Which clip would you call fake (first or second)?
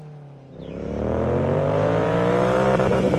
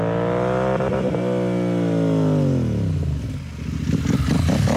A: first